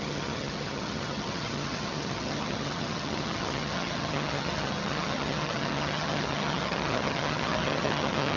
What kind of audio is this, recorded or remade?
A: remade